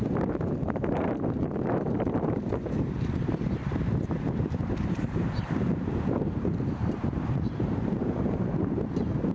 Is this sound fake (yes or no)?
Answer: yes